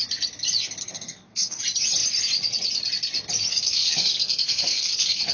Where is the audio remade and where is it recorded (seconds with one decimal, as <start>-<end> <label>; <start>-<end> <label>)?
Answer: 0.0-0.8 recorded; 0.8-1.6 remade; 1.6-3.5 recorded; 3.5-5.3 remade